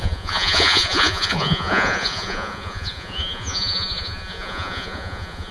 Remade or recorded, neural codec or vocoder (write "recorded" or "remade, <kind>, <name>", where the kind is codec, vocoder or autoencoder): remade, vocoder, Vocos